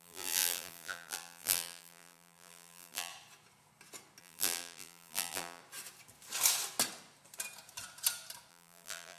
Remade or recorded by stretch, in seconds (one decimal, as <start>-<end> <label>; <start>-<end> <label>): 0.0-3.1 remade; 3.1-4.2 recorded; 4.2-5.6 remade; 5.6-8.5 recorded; 8.5-9.2 remade